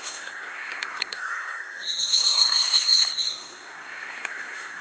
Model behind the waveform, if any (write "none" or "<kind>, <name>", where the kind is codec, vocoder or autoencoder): codec, SNAC